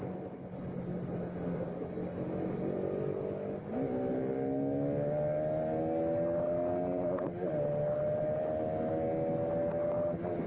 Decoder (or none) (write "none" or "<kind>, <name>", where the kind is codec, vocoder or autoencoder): none